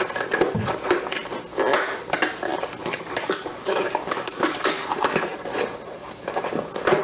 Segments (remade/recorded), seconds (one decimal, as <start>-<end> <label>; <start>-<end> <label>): 0.0-2.8 recorded; 2.8-4.8 remade; 4.8-7.0 recorded